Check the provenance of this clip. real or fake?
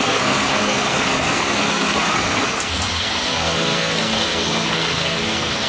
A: fake